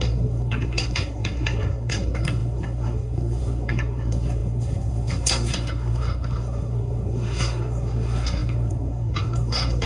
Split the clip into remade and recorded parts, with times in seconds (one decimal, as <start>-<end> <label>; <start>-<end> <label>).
0.0-9.9 remade